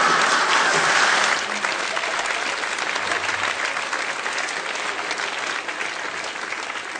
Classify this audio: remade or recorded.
recorded